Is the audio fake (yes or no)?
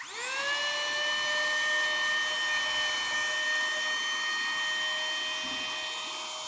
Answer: no